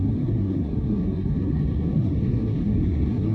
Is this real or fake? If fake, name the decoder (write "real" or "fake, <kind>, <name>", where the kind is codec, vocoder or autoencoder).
fake, codec, SNAC